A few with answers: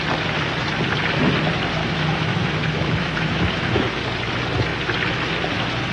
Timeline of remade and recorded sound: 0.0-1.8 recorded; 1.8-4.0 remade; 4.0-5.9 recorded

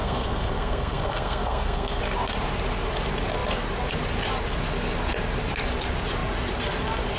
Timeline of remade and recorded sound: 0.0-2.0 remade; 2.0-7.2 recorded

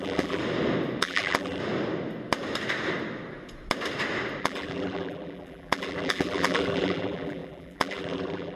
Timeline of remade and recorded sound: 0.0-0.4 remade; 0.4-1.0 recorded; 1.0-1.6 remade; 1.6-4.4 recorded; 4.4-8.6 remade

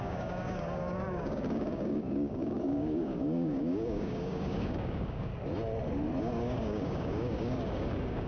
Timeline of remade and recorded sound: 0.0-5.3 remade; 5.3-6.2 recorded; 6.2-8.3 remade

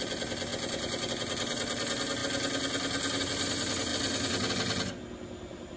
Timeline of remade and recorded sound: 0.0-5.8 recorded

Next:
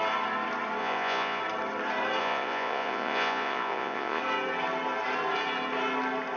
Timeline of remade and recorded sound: 0.0-0.8 recorded; 0.8-1.4 remade; 1.4-2.2 recorded; 2.2-4.2 remade; 4.2-6.4 recorded

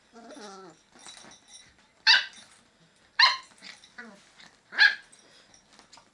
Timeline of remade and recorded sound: 0.0-6.1 recorded